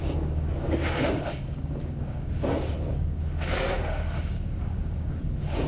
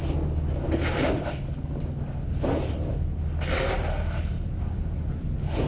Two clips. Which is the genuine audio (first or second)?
second